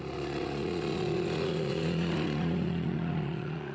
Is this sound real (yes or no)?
no